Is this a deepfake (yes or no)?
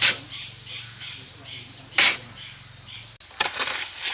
no